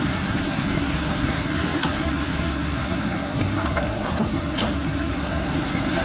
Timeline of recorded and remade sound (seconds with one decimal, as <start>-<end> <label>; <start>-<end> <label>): 0.0-6.0 remade

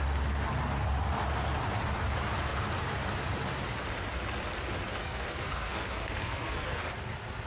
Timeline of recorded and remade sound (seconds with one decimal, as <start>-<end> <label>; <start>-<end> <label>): 0.0-5.0 recorded; 5.0-6.8 remade; 6.8-7.5 recorded

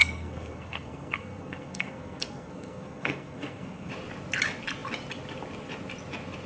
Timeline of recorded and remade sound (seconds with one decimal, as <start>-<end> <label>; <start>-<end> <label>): 0.0-3.9 remade; 3.9-6.5 recorded